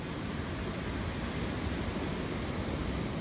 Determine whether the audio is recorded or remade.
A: recorded